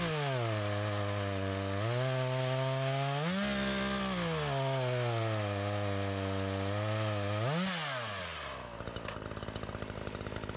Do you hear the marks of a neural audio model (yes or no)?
no